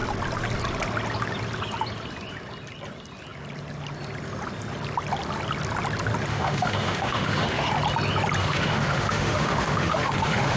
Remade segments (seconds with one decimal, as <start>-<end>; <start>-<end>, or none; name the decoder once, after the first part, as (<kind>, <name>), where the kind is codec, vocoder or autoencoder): 6.3-7.7 (autoencoder, DAC-VAE); 8.4-10.6